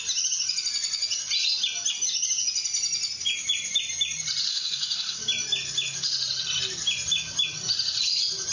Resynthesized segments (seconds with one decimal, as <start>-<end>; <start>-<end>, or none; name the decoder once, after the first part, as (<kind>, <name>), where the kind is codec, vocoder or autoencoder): 4.5-5.2 (codec, SNAC)